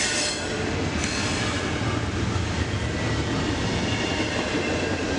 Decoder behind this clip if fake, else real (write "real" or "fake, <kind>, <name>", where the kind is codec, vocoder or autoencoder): real